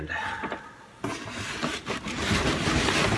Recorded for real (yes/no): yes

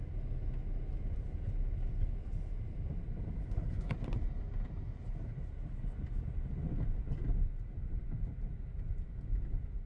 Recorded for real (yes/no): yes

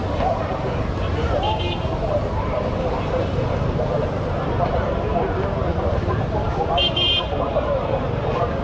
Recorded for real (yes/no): no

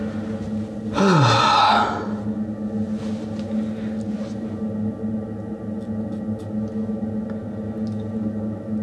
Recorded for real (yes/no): yes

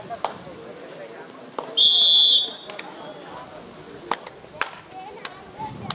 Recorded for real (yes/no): yes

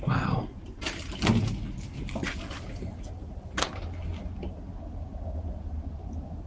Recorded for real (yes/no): yes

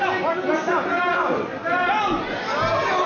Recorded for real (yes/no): yes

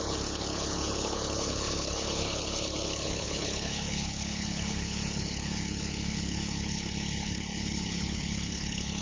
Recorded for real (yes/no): no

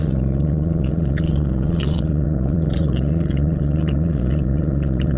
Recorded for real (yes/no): no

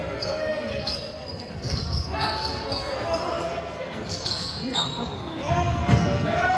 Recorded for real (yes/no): no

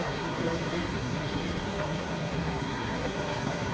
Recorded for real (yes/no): no